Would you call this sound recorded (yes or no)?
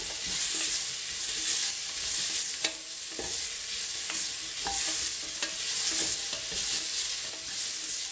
yes